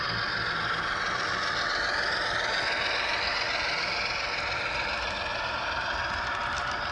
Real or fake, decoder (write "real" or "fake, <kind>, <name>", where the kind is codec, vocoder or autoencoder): real